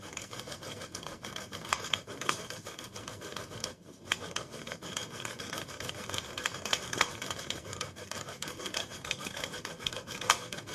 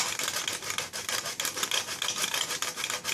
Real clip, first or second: second